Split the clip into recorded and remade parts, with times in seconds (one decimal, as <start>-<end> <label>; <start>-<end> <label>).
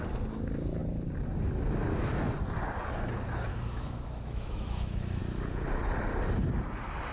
0.0-3.5 recorded; 3.5-5.2 remade; 5.2-7.1 recorded